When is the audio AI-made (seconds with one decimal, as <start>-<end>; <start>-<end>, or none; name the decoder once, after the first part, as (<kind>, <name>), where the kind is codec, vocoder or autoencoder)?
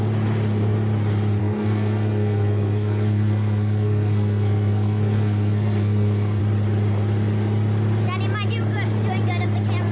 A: 1.4-6.4 (codec, SNAC)